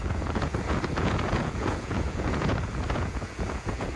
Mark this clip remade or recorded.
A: remade